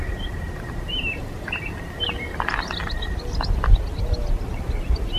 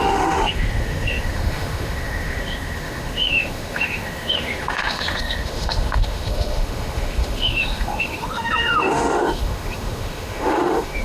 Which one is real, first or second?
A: first